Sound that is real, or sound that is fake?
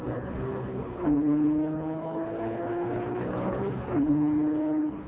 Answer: fake